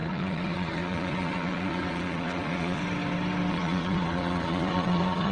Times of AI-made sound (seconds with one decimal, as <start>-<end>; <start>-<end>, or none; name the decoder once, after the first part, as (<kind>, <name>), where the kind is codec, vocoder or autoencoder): 0.0-2.8 (vocoder, Vocos); 3.5-5.3